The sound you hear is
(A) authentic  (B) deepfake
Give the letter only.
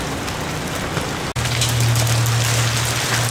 A